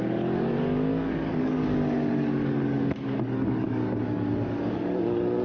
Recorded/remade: remade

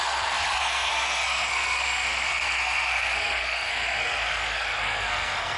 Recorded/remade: remade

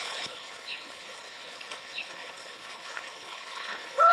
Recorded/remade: remade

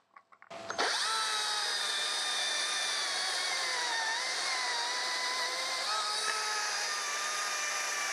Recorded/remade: remade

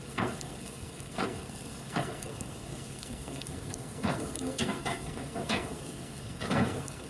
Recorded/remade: remade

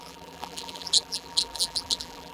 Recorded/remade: remade